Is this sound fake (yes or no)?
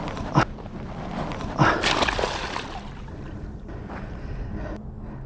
no